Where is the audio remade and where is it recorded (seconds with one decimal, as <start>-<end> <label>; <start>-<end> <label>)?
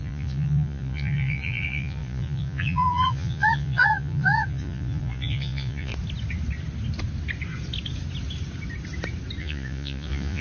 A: 0.0-5.9 remade; 5.9-9.4 recorded; 9.4-10.4 remade